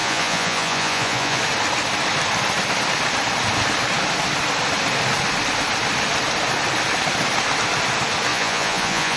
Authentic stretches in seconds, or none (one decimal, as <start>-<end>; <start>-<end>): 1.4-8.3